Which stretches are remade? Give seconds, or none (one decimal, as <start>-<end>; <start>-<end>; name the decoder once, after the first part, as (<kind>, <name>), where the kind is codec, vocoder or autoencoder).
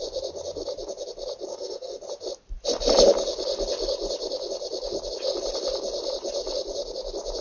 1.5-2.0 (codec, SNAC)